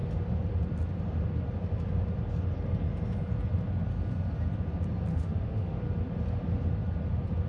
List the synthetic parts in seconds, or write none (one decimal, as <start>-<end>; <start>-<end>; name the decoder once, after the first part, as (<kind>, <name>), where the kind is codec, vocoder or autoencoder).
5.1-5.8 (autoencoder, DAC-VAE)